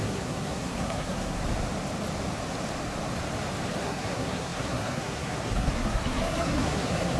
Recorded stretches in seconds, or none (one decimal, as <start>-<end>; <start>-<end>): 1.4-3.8